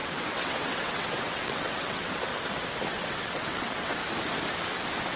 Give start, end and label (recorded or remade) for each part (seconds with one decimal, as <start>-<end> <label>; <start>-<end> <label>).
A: 0.0-2.3 remade; 2.3-2.9 recorded; 2.9-4.0 remade; 4.0-5.2 recorded